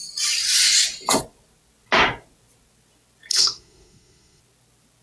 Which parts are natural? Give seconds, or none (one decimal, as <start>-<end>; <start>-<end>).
0.0-3.3; 4.4-5.0